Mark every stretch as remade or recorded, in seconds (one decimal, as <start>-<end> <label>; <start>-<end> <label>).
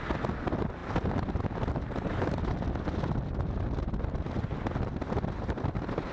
0.0-6.1 recorded